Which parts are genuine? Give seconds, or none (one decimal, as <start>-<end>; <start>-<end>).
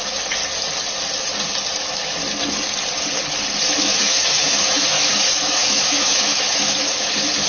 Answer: 0.4-1.8; 2.2-3.8